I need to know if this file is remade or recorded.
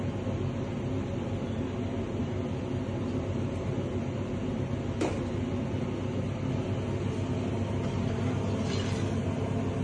recorded